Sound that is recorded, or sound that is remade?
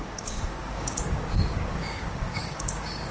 remade